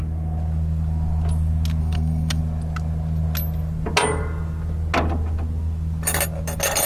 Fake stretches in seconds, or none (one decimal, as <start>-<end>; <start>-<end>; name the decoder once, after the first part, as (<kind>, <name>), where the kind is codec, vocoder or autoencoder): 1.8-2.4 (codec, SNAC)